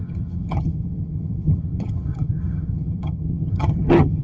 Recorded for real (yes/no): no